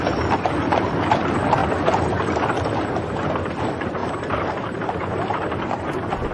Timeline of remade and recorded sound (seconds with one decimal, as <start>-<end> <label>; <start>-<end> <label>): 0.0-1.6 remade; 1.6-2.8 recorded; 2.8-6.3 remade